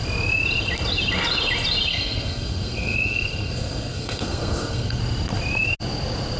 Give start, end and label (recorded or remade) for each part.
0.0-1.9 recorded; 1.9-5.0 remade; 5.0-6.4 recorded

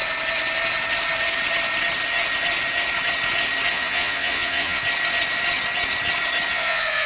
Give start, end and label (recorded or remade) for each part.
0.0-3.7 recorded; 3.7-4.8 remade; 4.8-6.5 recorded; 6.5-7.1 remade

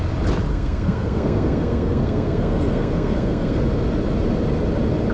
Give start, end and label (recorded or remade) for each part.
0.0-0.5 recorded; 0.5-3.6 remade; 3.6-5.1 recorded

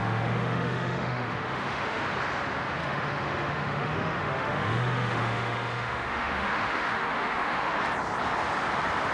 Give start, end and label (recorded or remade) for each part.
0.0-2.0 remade; 2.0-2.8 recorded; 2.8-7.8 remade; 7.8-9.1 recorded